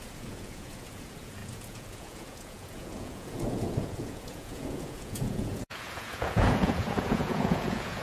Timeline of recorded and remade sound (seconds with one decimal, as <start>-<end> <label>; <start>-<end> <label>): 0.0-8.0 remade